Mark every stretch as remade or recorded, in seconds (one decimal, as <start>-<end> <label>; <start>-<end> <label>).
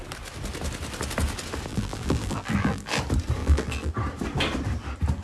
0.0-1.7 recorded; 1.7-3.0 remade; 3.0-3.4 recorded; 3.4-3.9 remade; 3.9-5.2 recorded